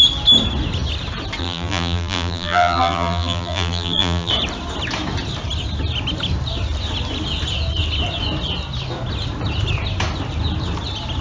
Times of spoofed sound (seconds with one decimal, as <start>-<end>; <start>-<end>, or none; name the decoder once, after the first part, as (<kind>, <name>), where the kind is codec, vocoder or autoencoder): 1.4-4.3 (vocoder, BigVGAN v2)